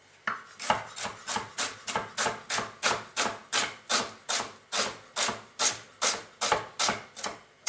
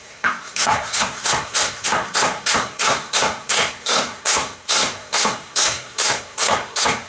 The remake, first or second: second